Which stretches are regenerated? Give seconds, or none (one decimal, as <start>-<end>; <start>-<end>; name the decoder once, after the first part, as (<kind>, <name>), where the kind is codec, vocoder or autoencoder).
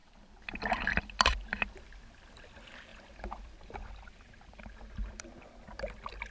0.0-2.0 (vocoder, BigVGAN v2); 2.9-5.4